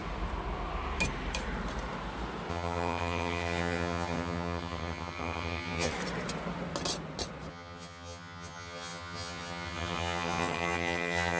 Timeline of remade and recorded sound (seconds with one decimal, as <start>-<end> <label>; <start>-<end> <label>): 0.0-2.5 recorded; 2.5-5.9 remade; 5.9-7.5 recorded; 7.5-11.4 remade